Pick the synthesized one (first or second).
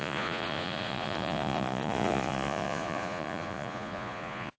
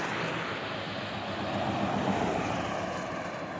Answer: first